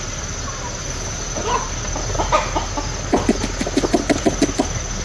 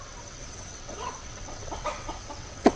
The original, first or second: first